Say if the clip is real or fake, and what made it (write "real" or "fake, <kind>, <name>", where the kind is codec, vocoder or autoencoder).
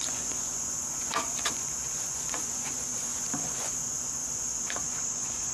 fake, vocoder, Vocos